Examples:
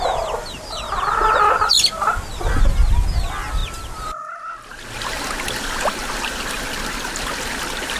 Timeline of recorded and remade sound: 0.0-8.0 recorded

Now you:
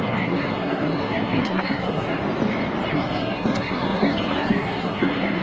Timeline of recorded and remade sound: 0.0-2.2 remade; 2.2-2.9 recorded; 2.9-5.4 remade

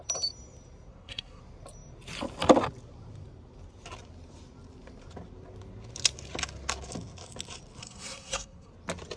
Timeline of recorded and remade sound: 0.0-0.9 recorded; 0.9-1.4 remade; 1.4-7.8 recorded; 7.8-8.7 remade; 8.7-9.2 recorded

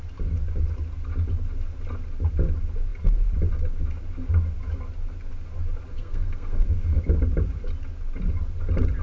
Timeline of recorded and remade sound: 0.0-5.9 recorded; 5.9-7.0 remade; 7.0-9.0 recorded

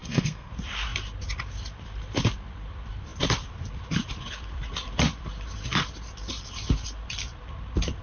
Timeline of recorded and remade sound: 0.0-0.5 remade; 0.5-8.0 recorded